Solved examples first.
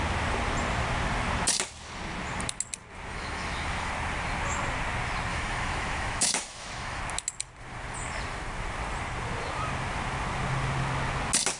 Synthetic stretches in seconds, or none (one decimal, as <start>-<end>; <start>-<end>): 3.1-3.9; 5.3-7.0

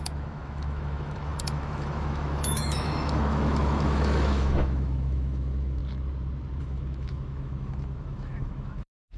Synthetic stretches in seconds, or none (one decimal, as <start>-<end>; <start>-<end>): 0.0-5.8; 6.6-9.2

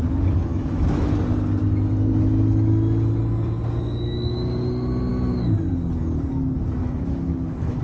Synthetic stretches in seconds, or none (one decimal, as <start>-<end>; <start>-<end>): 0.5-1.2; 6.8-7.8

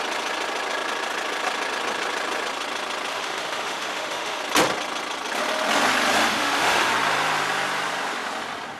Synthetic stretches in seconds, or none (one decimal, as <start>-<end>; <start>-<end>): 3.1-4.4; 6.3-6.9

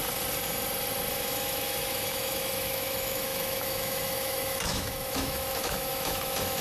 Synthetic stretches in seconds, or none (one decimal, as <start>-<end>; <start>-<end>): 1.1-6.6